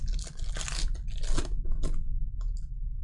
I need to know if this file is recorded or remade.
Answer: recorded